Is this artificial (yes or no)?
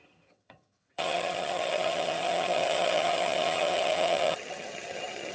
yes